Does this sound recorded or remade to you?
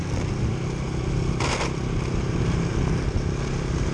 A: recorded